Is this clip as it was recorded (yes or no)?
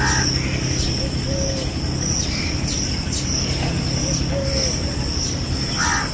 yes